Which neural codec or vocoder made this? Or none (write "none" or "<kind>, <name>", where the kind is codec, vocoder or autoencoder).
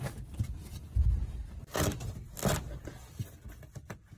none